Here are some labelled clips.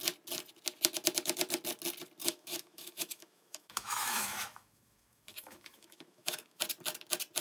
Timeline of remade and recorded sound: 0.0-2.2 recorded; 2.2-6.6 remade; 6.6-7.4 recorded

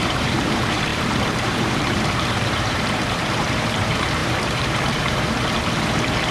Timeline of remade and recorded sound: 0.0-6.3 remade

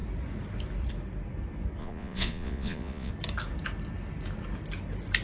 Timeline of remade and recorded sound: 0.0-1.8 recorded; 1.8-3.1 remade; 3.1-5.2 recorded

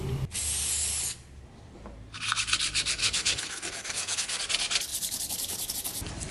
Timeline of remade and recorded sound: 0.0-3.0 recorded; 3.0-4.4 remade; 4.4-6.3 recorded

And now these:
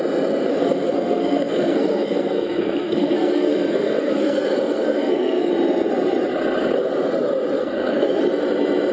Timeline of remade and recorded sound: 0.0-0.5 recorded; 0.5-5.5 remade; 5.5-7.6 recorded; 7.6-8.2 remade; 8.2-8.9 recorded

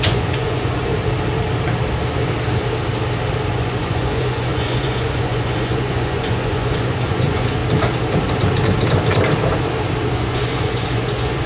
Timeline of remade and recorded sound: 0.0-0.9 remade; 0.9-3.4 recorded; 3.4-7.6 remade; 7.6-10.1 recorded; 10.1-11.5 remade

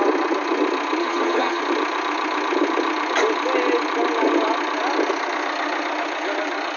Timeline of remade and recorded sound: 0.0-1.0 recorded; 1.0-1.6 remade; 1.6-6.8 recorded